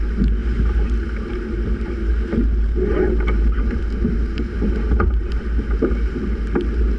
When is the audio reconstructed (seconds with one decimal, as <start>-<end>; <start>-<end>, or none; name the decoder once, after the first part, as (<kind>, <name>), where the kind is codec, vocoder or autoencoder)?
none

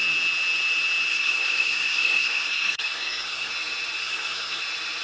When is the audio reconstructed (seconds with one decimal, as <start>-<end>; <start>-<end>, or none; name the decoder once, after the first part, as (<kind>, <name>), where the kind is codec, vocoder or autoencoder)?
1.1-3.5 (codec, SNAC); 4.0-4.6